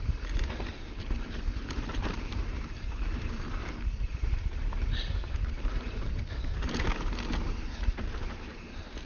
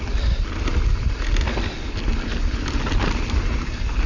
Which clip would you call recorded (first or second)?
second